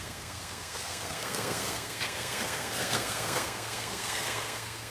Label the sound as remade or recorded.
remade